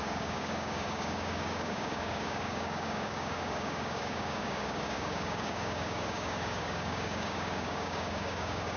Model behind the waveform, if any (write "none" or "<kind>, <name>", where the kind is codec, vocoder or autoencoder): codec, DAC